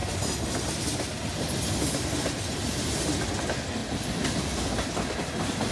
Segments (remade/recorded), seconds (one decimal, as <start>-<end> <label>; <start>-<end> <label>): 0.0-5.7 recorded

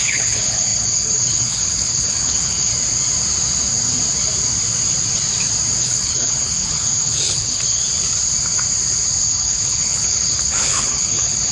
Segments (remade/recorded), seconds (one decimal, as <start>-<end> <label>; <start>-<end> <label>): 0.0-2.7 remade; 2.7-5.8 recorded; 5.8-7.8 remade; 7.8-9.2 recorded; 9.2-11.5 remade

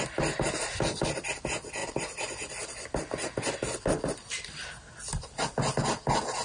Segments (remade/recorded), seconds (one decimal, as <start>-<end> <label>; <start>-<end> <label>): 0.0-6.4 recorded